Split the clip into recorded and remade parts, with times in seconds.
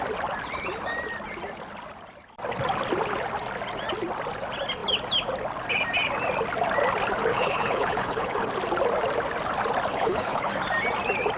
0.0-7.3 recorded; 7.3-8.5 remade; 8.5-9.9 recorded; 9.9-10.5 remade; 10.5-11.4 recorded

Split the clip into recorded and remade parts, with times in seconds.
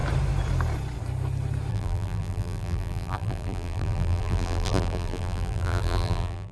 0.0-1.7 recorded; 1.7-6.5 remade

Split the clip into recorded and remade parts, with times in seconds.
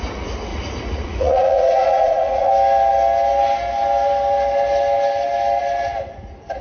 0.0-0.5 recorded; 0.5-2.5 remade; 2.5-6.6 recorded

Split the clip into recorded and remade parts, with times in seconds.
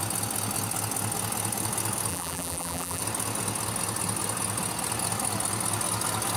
0.0-2.1 recorded; 2.1-3.0 remade; 3.0-6.4 recorded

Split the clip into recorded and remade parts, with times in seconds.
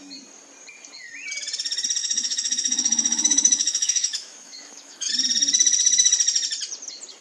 0.0-2.0 recorded; 2.0-5.1 remade; 5.1-7.2 recorded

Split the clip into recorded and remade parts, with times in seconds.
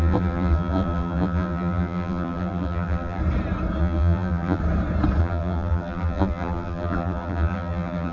0.0-3.2 remade; 3.2-3.8 recorded; 3.8-4.6 remade; 4.6-5.2 recorded; 5.2-8.1 remade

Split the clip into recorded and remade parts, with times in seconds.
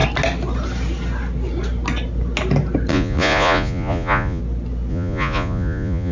0.0-2.9 recorded; 2.9-4.4 remade; 4.4-4.9 recorded; 4.9-6.1 remade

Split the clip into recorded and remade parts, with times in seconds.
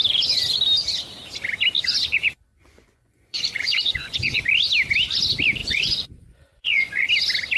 0.0-2.5 recorded; 2.5-4.4 remade; 4.4-5.6 recorded; 5.6-7.1 remade; 7.1-7.6 recorded